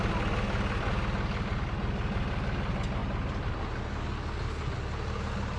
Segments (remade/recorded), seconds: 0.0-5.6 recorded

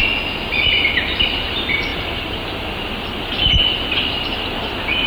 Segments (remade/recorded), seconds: 0.0-5.1 recorded